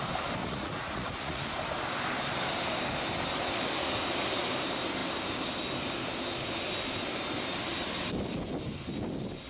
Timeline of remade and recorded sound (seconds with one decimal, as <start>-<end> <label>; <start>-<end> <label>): 0.0-0.4 recorded; 0.4-1.4 remade; 1.4-9.5 recorded